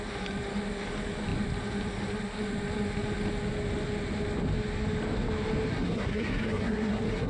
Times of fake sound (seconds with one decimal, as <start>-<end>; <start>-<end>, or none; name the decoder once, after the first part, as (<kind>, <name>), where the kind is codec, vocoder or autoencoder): 5.7-7.3 (codec, SNAC)